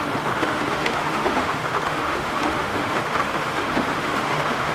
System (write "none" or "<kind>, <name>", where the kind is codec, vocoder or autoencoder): autoencoder, DAC-VAE